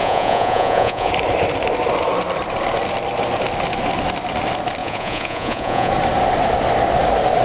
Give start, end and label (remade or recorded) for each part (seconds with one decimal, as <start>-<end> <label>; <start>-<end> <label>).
0.0-1.1 remade; 1.1-4.8 recorded; 4.8-5.9 remade; 5.9-7.4 recorded